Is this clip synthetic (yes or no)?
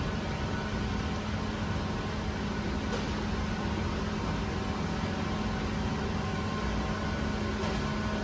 no